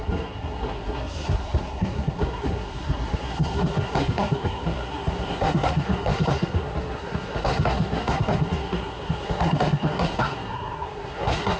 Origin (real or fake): fake